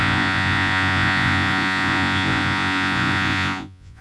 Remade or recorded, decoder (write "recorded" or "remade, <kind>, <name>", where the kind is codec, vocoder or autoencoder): remade, vocoder, Vocos